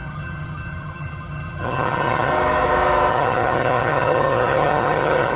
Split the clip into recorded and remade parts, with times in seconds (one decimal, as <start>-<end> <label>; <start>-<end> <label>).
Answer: 0.0-2.3 remade; 2.3-3.1 recorded; 3.1-5.4 remade